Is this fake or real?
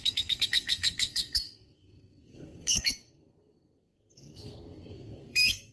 fake